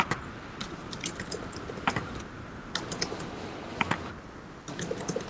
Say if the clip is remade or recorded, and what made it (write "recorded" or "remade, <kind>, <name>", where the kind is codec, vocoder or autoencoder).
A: recorded